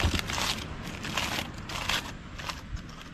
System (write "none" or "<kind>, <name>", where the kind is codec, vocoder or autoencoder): none